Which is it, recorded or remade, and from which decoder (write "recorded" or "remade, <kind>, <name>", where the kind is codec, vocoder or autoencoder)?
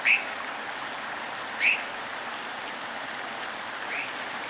recorded